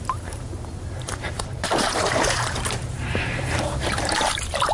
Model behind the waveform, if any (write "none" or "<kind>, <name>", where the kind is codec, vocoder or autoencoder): vocoder, BigVGAN v2